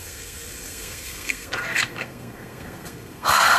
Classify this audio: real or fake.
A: fake